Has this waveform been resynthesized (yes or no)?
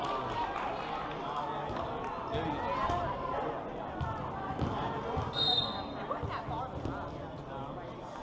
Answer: no